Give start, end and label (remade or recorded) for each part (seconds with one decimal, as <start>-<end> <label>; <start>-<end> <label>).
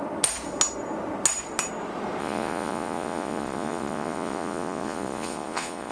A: 0.0-2.2 recorded; 2.2-5.9 remade